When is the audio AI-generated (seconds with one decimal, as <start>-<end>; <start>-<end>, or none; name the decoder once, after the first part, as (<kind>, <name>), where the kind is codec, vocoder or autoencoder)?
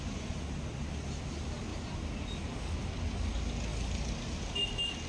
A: none